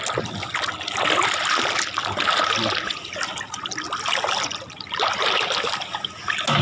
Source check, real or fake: real